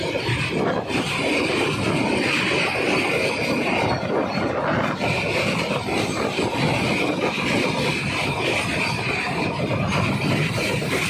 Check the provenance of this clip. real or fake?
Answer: real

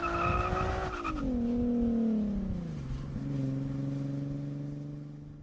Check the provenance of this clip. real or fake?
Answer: real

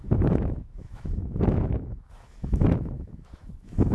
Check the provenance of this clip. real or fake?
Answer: fake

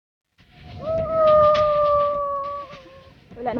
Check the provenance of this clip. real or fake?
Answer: real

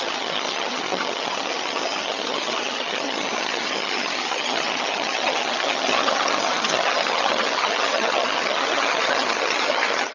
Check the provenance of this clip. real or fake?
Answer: fake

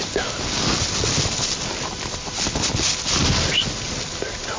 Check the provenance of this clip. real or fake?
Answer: real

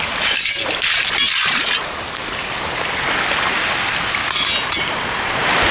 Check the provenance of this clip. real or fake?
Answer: real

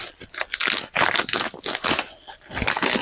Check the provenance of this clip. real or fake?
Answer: real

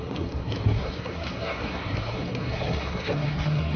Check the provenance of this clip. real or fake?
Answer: fake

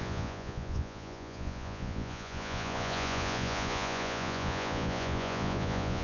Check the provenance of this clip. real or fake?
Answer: fake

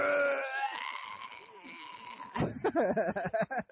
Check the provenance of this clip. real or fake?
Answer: real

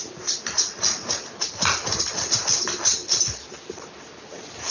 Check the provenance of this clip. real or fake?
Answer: real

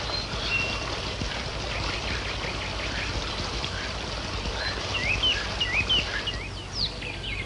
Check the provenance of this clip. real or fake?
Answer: real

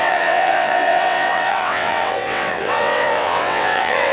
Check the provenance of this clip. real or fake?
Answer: fake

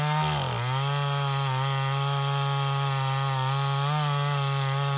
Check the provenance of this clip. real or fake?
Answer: real